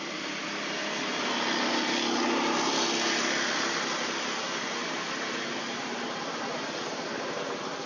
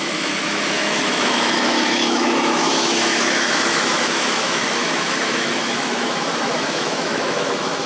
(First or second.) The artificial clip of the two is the second